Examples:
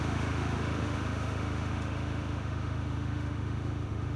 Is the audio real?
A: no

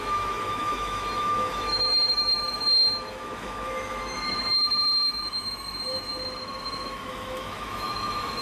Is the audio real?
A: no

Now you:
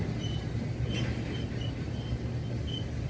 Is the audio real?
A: yes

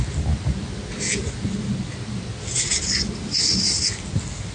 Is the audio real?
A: yes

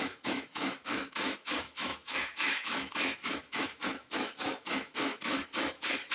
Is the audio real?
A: no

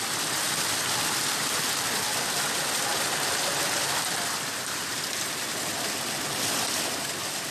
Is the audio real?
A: yes